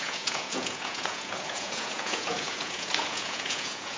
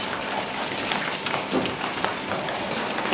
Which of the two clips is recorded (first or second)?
second